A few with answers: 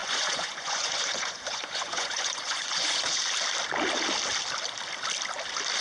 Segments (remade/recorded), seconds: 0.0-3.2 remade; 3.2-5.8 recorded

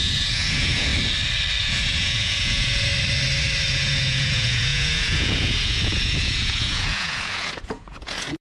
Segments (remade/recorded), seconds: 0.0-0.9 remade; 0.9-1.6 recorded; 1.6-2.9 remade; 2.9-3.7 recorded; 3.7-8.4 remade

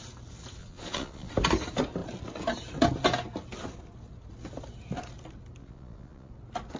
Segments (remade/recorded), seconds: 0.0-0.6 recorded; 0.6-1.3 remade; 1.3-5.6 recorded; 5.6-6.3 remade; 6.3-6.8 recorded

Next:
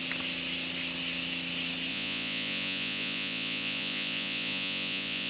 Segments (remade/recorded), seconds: 0.0-1.9 recorded; 1.9-5.3 remade

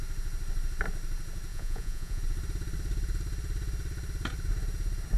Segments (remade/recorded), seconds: 0.0-1.5 recorded; 1.5-2.2 remade; 2.2-5.2 recorded